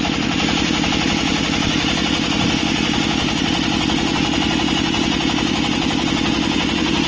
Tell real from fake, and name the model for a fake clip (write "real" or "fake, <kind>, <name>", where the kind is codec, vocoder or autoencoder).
real